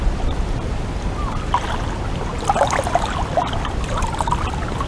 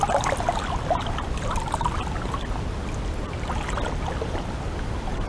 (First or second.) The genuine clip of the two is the second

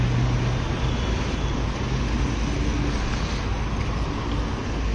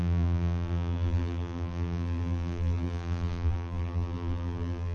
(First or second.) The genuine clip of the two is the first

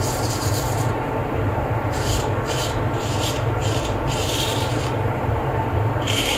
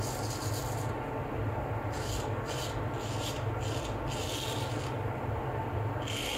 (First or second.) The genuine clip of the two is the second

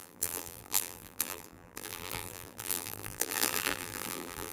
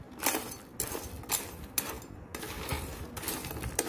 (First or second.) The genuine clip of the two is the second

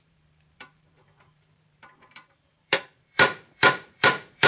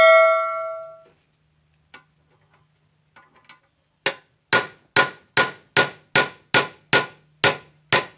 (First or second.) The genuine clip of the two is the second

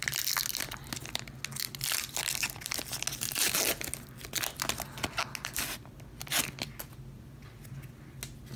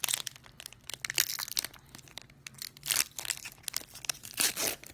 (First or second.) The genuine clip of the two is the first